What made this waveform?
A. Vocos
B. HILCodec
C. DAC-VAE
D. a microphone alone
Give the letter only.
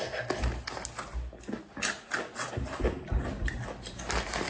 D